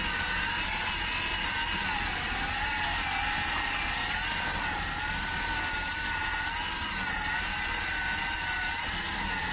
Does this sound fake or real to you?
real